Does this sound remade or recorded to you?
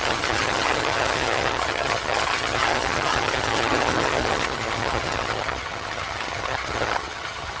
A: remade